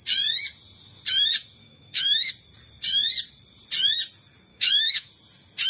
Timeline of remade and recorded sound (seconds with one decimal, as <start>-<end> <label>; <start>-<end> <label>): 0.0-1.6 recorded; 1.6-2.3 remade; 2.3-4.5 recorded; 4.5-5.1 remade; 5.1-5.7 recorded